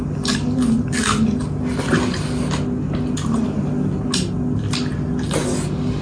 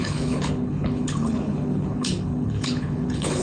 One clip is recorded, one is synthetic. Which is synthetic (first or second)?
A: second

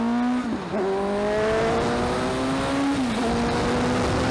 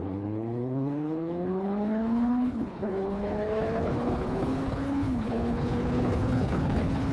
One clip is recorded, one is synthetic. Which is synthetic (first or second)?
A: second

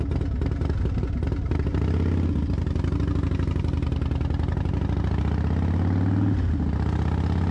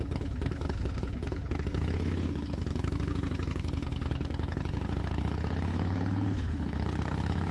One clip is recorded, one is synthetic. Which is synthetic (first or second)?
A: second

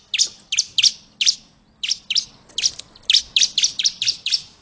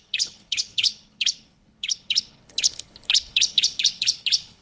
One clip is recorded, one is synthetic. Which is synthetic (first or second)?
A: second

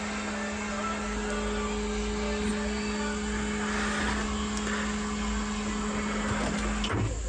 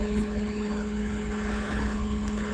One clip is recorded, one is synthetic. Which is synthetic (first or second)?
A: second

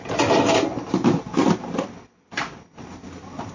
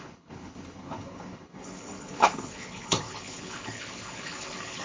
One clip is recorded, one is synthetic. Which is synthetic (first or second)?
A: second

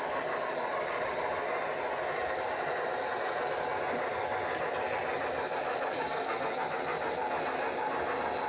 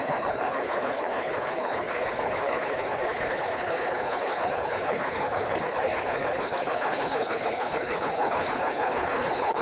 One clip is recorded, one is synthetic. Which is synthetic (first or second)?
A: second